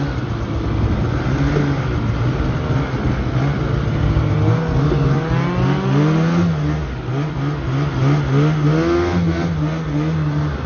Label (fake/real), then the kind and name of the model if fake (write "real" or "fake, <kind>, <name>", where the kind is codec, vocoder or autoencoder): real